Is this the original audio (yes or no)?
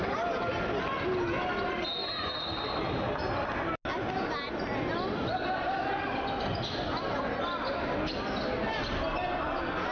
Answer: yes